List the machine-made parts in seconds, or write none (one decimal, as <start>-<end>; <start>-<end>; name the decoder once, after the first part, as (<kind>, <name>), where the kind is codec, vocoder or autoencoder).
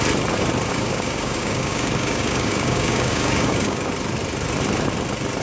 0.7-3.9 (codec, DAC)